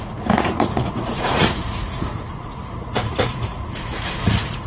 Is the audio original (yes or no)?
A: no